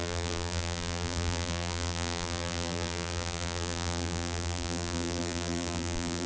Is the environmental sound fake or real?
fake